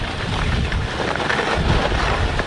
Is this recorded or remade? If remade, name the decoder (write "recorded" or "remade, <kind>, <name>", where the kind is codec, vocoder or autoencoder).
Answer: recorded